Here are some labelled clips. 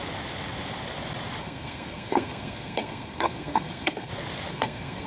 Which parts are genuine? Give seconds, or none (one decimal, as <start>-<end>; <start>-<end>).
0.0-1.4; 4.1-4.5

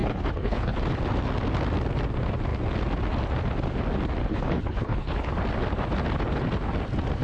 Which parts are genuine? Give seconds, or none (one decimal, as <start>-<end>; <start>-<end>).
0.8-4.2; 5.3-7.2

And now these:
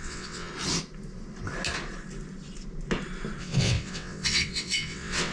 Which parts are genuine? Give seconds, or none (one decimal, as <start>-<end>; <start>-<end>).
0.5-3.4

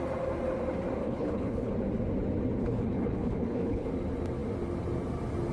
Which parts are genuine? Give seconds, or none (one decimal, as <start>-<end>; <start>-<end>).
0.0-1.0; 1.7-2.6; 3.9-5.5

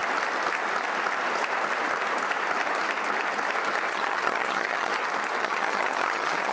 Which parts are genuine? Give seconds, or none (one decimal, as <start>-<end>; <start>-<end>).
0.0-3.9; 4.9-5.4

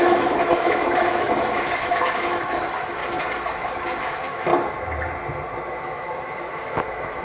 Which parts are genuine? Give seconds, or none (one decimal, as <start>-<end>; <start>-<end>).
3.0-4.0; 4.5-5.8

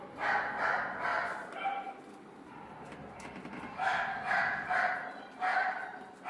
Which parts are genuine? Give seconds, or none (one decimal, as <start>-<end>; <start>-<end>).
0.0-6.3